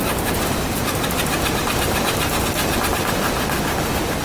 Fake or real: real